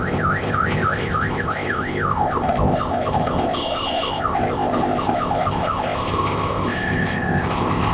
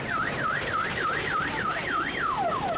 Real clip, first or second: second